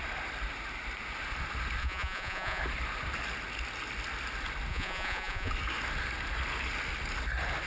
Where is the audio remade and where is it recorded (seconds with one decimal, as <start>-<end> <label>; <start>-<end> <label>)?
0.0-1.8 recorded; 1.8-2.6 remade; 2.6-4.7 recorded; 4.7-5.5 remade; 5.5-7.7 recorded